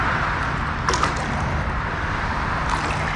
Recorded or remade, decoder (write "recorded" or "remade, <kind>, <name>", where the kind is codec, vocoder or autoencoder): recorded